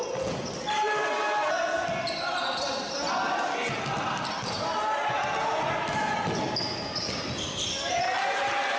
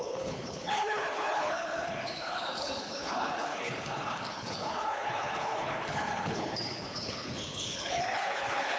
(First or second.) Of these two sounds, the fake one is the second